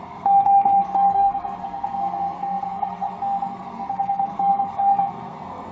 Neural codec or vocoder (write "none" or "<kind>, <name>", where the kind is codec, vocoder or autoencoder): codec, SNAC